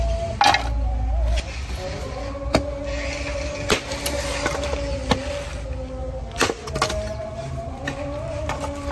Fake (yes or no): no